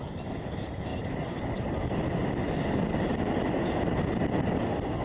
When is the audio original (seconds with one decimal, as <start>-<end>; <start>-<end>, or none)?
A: 0.0-0.9; 3.9-5.0